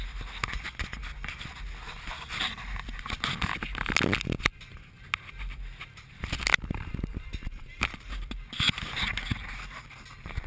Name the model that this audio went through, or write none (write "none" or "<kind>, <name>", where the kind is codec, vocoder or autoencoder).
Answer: none